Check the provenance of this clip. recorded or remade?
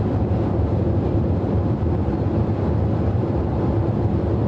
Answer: recorded